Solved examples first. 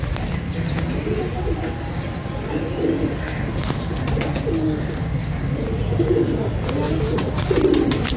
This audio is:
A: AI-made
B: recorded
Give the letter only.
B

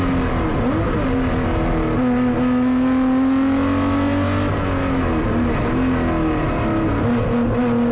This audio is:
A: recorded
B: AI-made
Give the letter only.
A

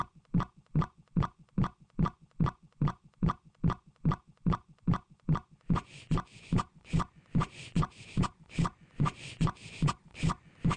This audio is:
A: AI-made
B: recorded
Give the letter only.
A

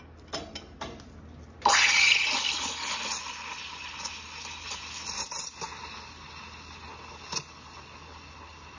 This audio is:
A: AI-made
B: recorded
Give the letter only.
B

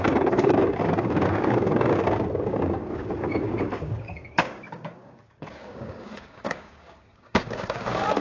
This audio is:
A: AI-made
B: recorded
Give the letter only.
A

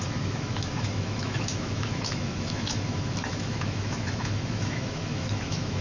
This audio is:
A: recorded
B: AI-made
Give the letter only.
B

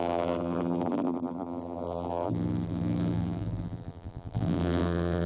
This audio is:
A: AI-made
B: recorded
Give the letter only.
A